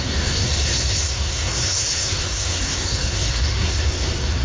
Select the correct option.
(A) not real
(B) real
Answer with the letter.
A